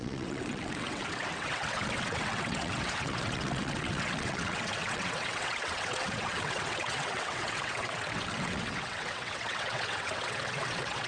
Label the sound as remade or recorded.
remade